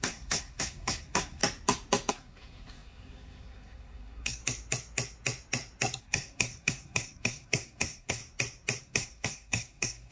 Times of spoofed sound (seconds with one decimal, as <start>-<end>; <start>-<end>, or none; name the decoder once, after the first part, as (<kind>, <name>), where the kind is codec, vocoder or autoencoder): 0.0-1.4 (codec, SNAC); 2.1-4.4; 6.0-8.2; 8.8-10.1